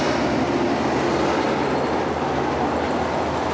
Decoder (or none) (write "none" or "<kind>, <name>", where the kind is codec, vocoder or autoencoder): none